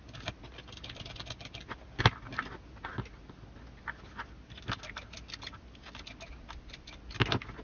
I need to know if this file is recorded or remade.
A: recorded